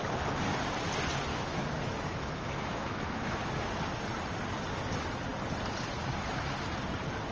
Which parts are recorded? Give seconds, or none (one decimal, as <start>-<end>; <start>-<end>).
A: 0.0-1.3; 3.7-7.3